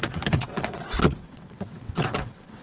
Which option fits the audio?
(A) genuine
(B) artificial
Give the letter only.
B